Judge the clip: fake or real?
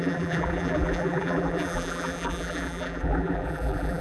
fake